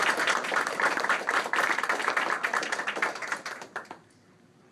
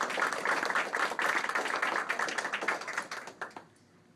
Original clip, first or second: second